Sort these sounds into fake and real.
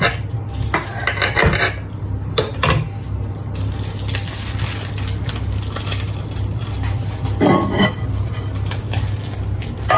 real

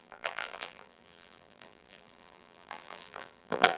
fake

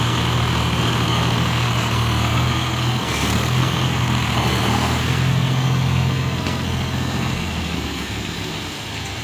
fake